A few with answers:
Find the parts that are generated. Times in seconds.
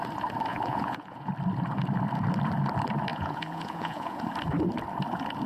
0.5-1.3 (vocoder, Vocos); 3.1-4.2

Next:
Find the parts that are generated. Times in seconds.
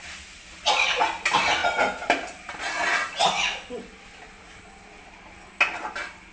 none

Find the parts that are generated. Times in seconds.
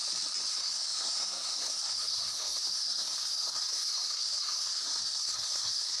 0.5-6.0 (codec, SNAC)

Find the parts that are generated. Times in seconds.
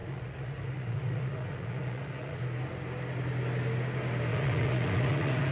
0.0-2.4 (vocoder, Vocos); 4.3-5.5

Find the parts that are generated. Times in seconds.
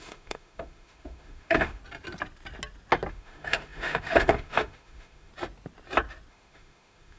0.0-1.8 (autoencoder, DAC-VAE); 3.1-5.3; 6.3-7.2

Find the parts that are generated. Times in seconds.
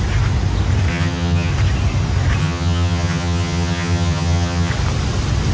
0.9-1.5 (vocoder, HiFi-GAN); 2.4-4.7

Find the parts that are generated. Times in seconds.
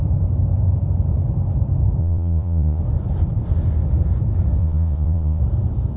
2.0-2.8 (vocoder, Vocos); 4.6-5.4